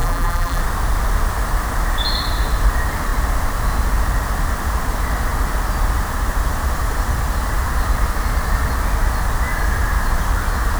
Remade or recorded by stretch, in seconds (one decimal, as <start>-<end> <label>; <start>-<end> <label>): 0.0-0.6 remade; 0.6-10.8 recorded